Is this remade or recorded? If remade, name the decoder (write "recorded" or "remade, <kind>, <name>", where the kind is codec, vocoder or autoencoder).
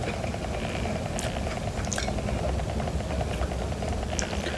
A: recorded